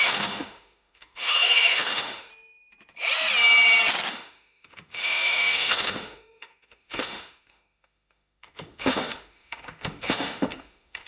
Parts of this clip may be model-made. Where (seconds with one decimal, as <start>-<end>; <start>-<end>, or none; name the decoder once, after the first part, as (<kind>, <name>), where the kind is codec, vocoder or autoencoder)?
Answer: 0.0-2.3 (autoencoder, DAC-VAE); 4.1-11.1